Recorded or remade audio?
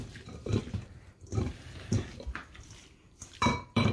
remade